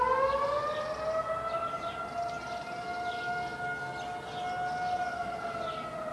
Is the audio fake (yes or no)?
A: no